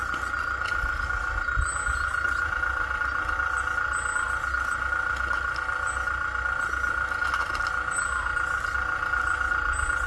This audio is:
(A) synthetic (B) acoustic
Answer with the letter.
B